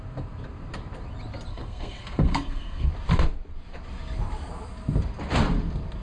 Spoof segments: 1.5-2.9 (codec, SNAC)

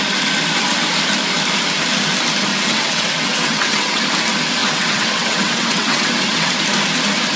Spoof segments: 2.5-4.0 (vocoder, WaveNeXt); 4.6-6.5